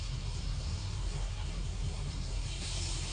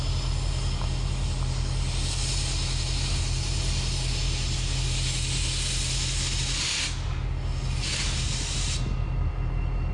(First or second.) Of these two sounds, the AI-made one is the first